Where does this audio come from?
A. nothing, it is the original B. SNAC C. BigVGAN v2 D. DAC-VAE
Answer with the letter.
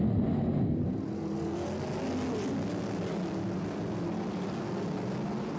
A